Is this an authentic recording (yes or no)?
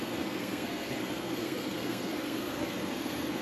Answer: no